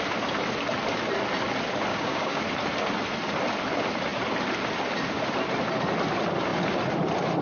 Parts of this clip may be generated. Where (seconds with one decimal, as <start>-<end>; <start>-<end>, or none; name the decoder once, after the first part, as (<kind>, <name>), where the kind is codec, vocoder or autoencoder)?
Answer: 1.9-2.4 (codec, DAC)